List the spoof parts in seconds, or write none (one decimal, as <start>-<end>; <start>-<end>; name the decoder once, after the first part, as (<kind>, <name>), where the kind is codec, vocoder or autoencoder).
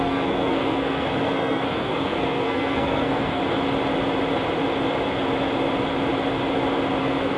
0.0-3.4 (codec, SNAC); 7.0-7.4